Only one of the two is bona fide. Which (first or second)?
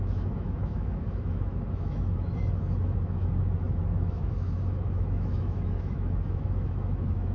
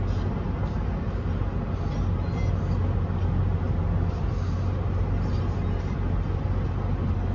second